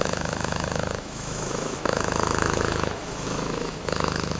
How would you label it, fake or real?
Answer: fake